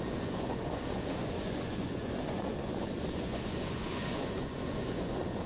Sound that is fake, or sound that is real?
fake